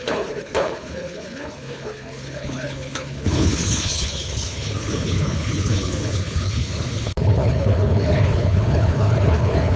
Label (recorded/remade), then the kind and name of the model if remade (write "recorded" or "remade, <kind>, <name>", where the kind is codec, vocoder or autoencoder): remade, codec, HILCodec